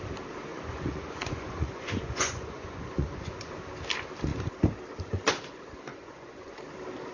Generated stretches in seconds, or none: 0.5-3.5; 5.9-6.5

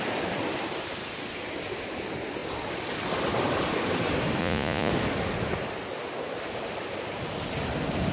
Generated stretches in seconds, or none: 4.4-4.9